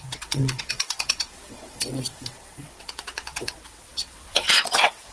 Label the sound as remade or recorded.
remade